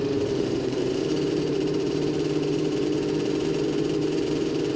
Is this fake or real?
fake